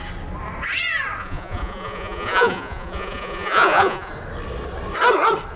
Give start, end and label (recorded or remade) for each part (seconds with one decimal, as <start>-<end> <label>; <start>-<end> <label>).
0.0-1.2 recorded; 1.2-4.1 remade; 4.1-5.6 recorded